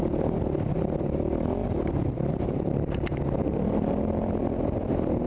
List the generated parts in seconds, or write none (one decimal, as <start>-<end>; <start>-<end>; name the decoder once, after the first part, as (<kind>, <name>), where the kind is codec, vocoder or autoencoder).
1.6-4.4 (vocoder, BigVGAN v2)